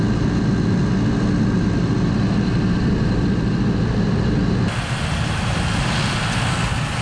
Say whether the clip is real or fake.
real